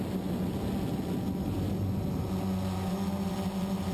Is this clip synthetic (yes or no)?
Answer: no